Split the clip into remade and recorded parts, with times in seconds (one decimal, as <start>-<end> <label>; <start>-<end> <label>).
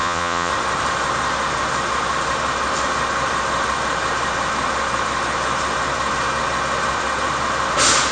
0.0-0.5 remade; 0.5-8.1 recorded